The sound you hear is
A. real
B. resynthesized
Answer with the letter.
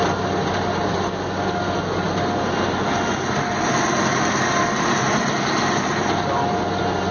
A